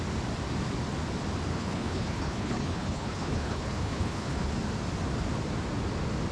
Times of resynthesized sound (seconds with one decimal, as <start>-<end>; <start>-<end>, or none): 1.5-4.5